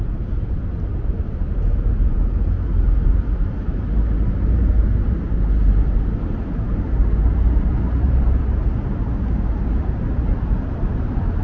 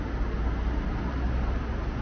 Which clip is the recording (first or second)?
second